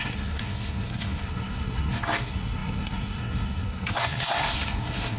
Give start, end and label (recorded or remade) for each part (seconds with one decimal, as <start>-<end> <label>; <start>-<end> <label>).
0.0-5.2 remade